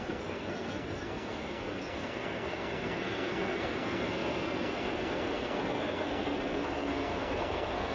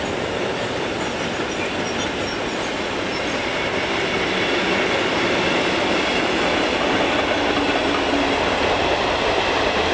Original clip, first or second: second